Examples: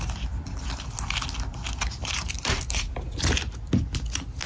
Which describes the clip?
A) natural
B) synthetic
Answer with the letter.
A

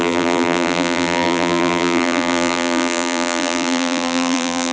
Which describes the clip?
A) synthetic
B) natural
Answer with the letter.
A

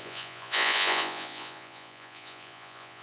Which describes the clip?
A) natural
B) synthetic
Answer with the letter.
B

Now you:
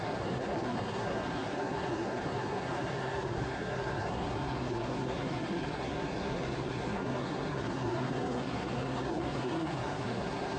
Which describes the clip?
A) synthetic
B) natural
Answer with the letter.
A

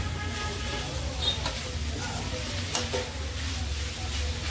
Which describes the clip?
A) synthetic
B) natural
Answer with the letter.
B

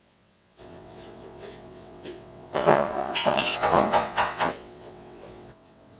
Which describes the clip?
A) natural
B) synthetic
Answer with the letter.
B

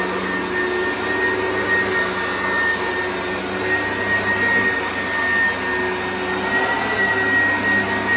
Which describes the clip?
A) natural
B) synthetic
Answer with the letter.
A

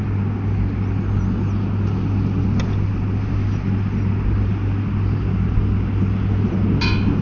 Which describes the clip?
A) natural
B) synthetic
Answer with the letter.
A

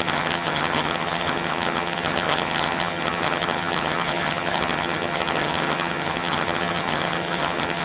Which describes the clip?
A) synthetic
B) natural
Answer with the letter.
A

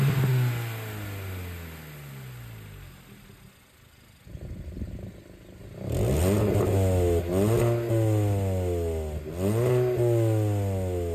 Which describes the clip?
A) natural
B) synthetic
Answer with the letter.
A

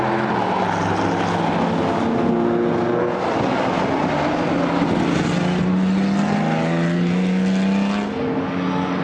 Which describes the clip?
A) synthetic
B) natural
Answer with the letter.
B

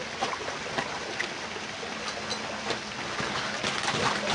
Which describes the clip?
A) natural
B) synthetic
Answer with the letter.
A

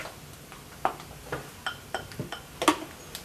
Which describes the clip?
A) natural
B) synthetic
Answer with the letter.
A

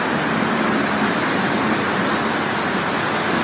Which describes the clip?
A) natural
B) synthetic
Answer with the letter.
A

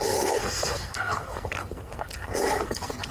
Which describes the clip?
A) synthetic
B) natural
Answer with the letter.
A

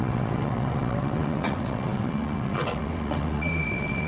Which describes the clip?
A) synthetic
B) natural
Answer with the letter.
A